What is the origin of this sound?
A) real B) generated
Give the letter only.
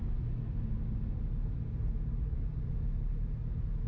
A